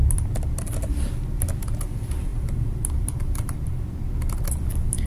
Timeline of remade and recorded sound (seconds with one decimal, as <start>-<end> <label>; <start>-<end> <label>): 0.0-2.3 recorded; 2.3-3.8 remade; 3.8-5.1 recorded